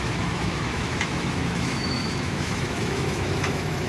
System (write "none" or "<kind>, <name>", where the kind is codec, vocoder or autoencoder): autoencoder, DAC-VAE